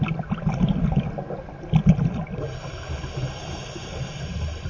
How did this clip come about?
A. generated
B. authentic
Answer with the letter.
B